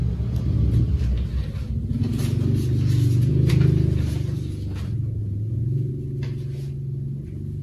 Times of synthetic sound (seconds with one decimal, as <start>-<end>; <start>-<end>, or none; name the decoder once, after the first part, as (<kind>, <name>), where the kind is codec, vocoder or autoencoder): 5.2-5.9 (vocoder, Vocos)